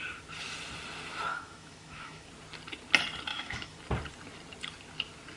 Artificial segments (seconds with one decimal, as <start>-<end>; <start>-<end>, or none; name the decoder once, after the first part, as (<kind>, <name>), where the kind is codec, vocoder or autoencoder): 1.3-2.3 (autoencoder, DAC-VAE); 3.3-3.8

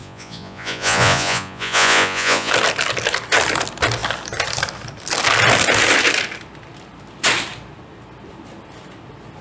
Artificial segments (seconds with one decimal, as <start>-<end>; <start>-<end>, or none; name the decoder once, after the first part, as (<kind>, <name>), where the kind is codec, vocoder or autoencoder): 0.0-2.5 (vocoder, Vocos)

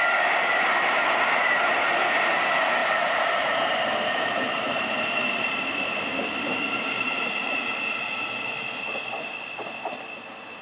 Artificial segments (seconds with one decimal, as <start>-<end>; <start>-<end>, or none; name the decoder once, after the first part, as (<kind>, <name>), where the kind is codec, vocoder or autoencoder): 2.8-8.0 (vocoder, BigVGAN v2)

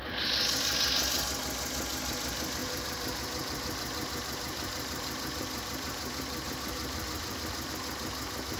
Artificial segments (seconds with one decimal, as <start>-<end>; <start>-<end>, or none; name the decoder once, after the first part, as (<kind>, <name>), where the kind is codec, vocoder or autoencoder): 2.6-7.7 (vocoder, BigVGAN v2)

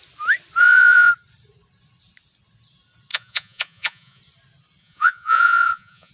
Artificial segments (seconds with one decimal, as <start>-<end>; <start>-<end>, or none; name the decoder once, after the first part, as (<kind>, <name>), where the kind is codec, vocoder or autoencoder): 0.6-1.1 (vocoder, Vocos); 3.1-4.2; 4.8-6.1

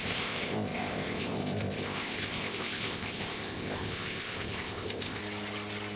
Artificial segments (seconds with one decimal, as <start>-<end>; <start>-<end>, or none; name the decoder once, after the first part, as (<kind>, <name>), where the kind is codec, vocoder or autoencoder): 0.0-5.2 (codec, ZipCodec)

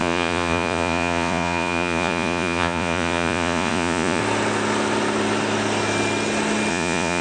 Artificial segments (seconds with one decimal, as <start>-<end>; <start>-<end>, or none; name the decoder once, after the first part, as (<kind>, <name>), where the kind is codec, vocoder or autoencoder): 0.0-4.2 (vocoder, Vocos); 6.7-7.2